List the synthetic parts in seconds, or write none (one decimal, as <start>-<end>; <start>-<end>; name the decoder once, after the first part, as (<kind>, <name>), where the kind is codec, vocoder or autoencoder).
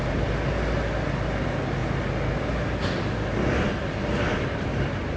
none